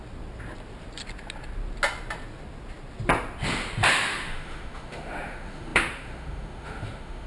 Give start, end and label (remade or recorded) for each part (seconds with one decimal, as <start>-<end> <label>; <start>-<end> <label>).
0.0-3.9 recorded; 3.9-7.3 remade